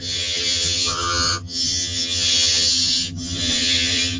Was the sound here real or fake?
fake